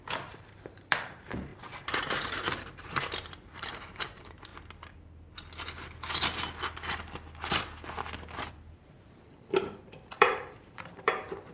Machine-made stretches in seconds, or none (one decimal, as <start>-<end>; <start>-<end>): 0.0-4.5; 8.5-11.5